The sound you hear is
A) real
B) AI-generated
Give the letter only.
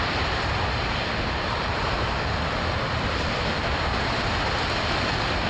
B